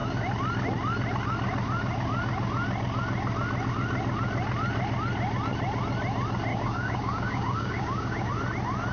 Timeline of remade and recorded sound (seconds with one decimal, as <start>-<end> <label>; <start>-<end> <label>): 0.0-6.5 recorded; 6.5-8.3 remade; 8.3-8.9 recorded